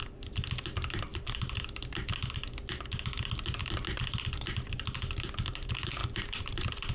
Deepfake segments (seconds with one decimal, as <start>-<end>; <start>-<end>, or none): 6.0-6.9